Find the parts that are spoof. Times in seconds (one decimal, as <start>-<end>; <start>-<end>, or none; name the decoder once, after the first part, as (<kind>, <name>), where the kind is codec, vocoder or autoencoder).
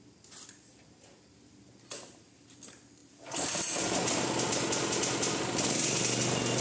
none